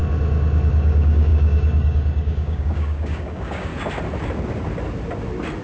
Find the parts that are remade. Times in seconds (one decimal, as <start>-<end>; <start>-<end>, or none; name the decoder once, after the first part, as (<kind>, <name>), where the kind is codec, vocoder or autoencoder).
0.7-3.7 (codec, DAC)